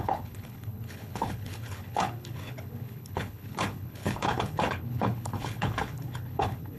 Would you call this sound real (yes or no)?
no